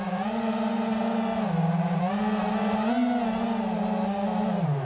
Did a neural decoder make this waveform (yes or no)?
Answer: no